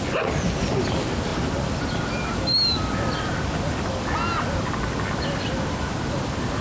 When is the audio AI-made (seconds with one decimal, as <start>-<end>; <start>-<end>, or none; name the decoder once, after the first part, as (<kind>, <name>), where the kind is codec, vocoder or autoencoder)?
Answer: none